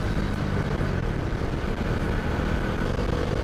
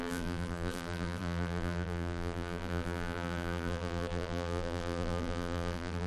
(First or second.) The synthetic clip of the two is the second